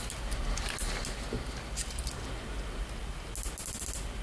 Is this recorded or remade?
recorded